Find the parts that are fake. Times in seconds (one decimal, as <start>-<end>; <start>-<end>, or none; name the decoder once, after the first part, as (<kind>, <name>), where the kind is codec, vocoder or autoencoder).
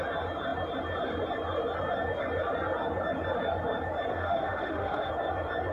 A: 4.1-5.1 (autoencoder, DAC-VAE)